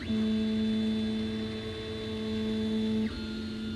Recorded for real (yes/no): yes